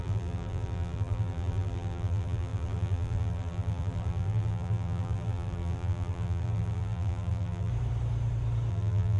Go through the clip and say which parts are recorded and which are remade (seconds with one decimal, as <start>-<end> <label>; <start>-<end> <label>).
0.0-7.7 remade; 7.7-8.7 recorded; 8.7-9.2 remade